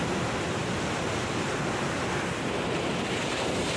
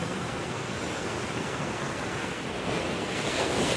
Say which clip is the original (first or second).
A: first